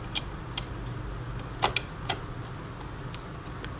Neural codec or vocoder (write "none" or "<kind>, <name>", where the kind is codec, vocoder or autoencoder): none